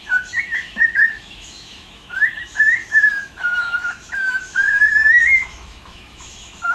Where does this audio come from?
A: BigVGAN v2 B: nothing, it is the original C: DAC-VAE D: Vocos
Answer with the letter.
C